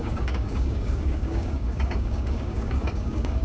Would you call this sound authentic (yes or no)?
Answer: no